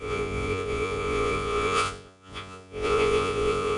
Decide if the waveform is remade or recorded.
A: remade